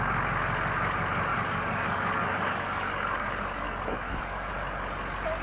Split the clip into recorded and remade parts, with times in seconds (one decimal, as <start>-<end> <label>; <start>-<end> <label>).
0.0-1.3 recorded; 1.3-4.5 remade; 4.5-5.4 recorded